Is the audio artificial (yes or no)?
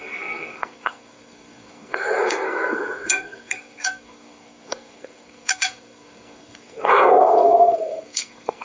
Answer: yes